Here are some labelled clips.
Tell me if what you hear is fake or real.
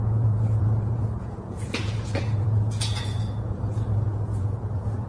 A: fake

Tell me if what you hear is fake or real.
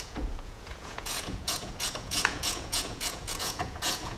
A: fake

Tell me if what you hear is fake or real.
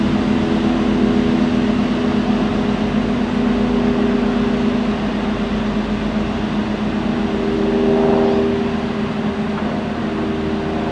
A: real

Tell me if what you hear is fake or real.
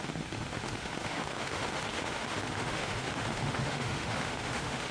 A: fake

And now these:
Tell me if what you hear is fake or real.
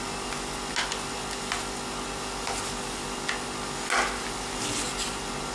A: real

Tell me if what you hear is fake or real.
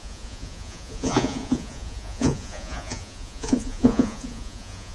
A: fake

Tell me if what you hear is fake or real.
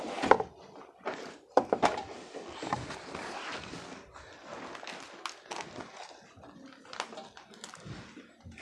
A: real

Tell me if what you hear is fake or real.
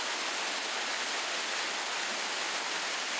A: real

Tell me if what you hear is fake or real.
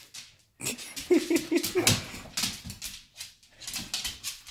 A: real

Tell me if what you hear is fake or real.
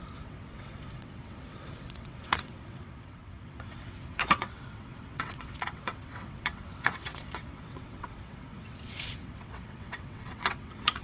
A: fake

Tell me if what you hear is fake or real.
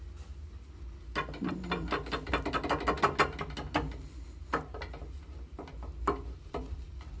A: real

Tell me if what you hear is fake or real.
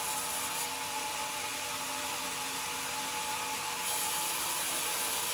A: real